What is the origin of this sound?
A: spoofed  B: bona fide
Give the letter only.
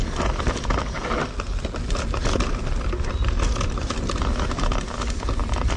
B